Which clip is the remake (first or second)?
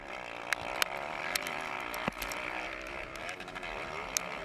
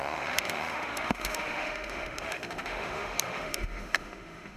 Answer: second